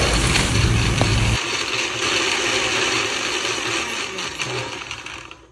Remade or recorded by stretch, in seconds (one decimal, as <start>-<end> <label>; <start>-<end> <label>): 0.0-5.5 recorded